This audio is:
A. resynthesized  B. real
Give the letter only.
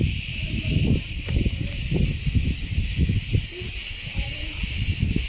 A